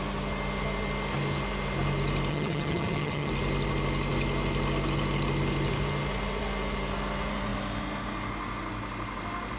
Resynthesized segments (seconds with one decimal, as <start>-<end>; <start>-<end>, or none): 2.3-3.3